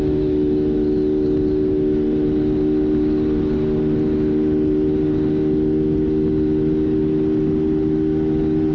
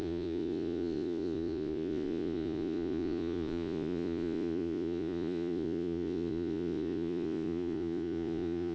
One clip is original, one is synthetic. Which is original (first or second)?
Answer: first